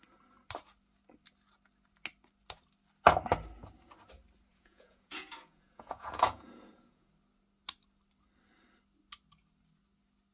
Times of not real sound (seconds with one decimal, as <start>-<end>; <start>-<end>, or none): 4.5-7.1